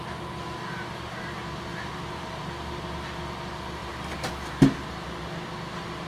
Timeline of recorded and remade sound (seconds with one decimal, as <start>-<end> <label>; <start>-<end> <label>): 0.0-1.7 recorded; 1.7-2.2 remade; 2.2-3.8 recorded; 3.8-4.3 remade; 4.3-6.1 recorded